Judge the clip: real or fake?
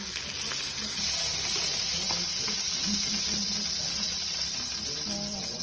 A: real